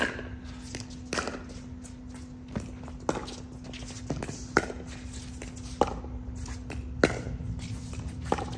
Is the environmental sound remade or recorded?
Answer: recorded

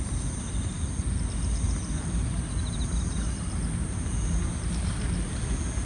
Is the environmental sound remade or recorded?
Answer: recorded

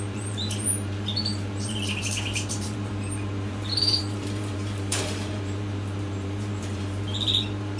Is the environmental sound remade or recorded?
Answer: remade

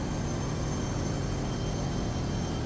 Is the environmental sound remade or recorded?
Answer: recorded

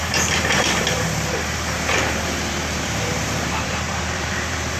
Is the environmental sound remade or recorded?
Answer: remade